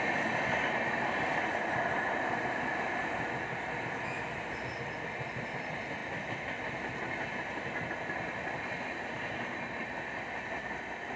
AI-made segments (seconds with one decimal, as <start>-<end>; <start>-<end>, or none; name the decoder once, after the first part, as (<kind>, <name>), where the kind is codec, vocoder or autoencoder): none